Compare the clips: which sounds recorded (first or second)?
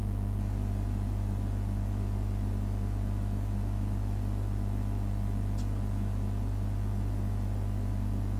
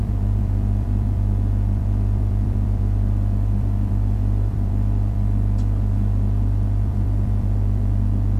first